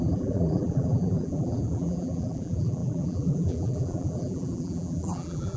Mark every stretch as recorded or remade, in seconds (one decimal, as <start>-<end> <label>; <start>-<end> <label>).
0.0-5.6 remade